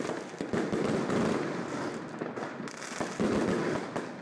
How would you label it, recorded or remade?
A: recorded